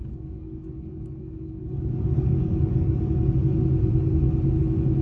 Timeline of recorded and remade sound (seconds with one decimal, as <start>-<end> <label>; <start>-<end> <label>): 0.0-3.0 remade; 3.0-5.0 recorded